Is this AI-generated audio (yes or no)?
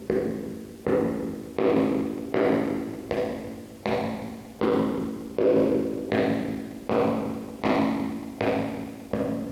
yes